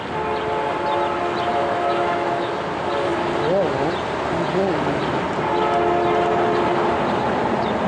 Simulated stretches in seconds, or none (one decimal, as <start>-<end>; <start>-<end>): 1.5-2.6